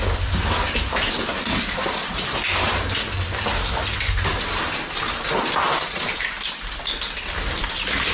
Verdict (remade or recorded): recorded